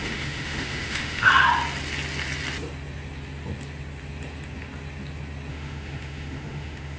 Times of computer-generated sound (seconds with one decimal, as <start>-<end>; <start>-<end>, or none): 0.0-1.3; 5.5-7.0